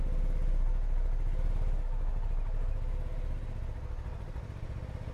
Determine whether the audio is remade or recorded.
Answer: recorded